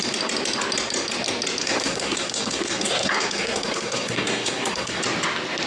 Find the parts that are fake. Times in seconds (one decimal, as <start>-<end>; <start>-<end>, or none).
1.6-5.0